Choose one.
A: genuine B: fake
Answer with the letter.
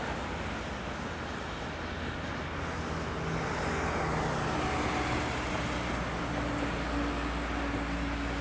A